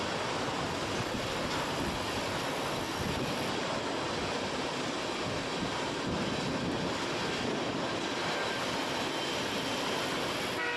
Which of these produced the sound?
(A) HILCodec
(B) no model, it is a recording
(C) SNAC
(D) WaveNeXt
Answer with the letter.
B